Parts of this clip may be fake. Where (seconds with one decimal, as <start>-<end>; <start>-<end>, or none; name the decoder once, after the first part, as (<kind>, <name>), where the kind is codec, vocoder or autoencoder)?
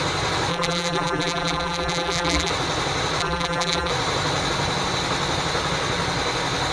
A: 0.5-2.5 (vocoder, BigVGAN v2); 3.2-3.9